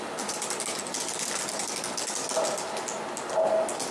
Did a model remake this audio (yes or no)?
no